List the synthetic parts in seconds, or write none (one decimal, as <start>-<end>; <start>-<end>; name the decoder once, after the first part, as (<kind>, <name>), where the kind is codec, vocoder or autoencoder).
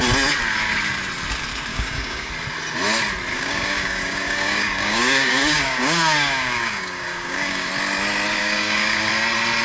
1.7-2.3 (codec, DAC); 3.3-7.7; 8.4-9.1